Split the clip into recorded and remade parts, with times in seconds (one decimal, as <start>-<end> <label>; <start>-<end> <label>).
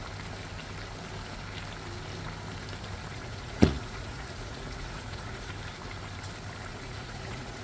0.0-3.1 recorded; 3.1-5.5 remade; 5.5-6.7 recorded; 6.7-7.6 remade